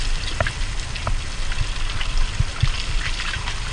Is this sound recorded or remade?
recorded